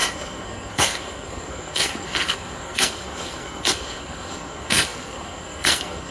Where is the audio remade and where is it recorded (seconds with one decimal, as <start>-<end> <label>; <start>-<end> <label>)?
0.0-6.1 remade